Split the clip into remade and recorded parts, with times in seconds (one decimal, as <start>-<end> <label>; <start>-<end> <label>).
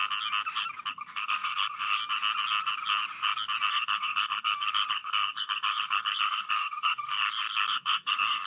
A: 0.0-0.9 recorded; 0.9-2.0 remade; 2.0-3.7 recorded; 3.7-8.5 remade